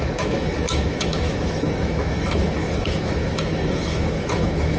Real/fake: fake